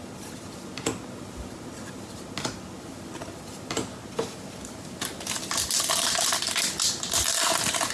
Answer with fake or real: real